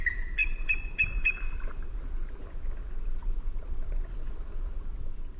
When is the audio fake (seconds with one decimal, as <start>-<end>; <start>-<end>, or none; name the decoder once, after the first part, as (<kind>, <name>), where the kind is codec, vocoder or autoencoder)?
0.4-2.3 (vocoder, BigVGAN v2)